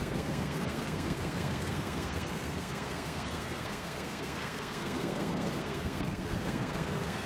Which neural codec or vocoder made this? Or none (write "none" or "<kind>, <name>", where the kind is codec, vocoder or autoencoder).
codec, SNAC